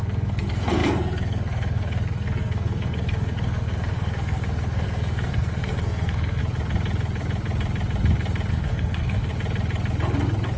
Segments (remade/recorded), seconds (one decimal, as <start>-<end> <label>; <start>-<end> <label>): 0.0-6.4 remade; 6.4-8.5 recorded; 8.5-9.3 remade; 9.3-10.6 recorded